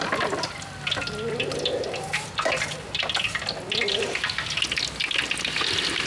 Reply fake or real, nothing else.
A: real